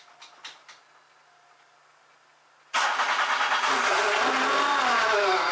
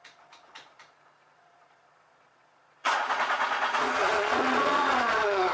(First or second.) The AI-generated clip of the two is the second